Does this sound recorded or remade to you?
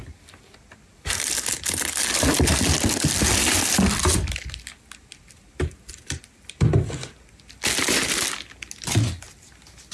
recorded